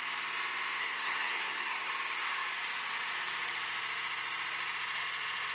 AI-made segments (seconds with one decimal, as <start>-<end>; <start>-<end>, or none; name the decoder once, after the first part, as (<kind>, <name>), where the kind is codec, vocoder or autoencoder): 0.8-1.9 (codec, SNAC)